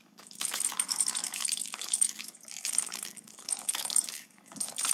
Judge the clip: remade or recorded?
remade